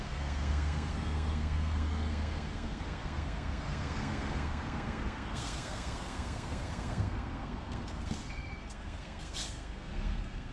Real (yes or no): no